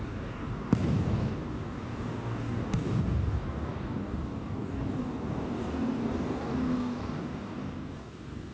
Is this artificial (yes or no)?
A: yes